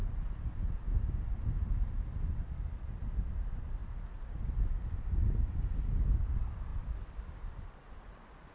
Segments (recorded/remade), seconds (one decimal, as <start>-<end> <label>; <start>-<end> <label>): 0.0-8.5 recorded